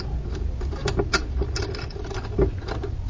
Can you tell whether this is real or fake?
real